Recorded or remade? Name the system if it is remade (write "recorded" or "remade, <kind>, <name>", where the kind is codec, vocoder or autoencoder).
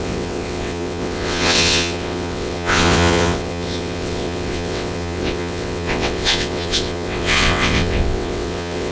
remade, vocoder, WaveNeXt